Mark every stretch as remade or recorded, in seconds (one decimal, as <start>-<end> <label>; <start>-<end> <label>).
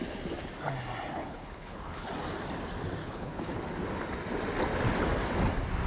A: 0.0-1.1 recorded; 1.1-2.1 remade; 2.1-3.0 recorded; 3.0-3.6 remade; 3.6-5.9 recorded